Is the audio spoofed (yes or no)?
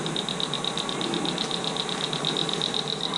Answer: no